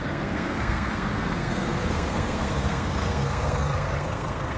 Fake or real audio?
fake